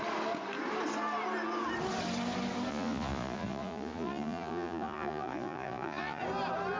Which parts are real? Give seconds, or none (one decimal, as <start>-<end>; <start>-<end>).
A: 0.0-2.7; 6.2-6.8